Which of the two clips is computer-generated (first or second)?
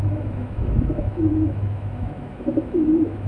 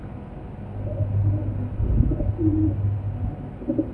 first